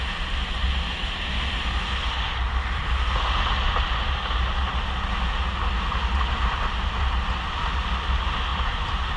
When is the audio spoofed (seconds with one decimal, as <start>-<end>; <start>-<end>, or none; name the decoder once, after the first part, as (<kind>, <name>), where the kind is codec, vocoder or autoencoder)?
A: 8.5-9.2 (vocoder, BigVGAN v2)